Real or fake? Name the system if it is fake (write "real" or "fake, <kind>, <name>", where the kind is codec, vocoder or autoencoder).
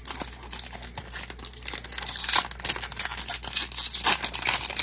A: real